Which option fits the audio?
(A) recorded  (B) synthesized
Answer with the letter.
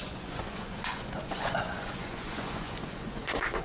B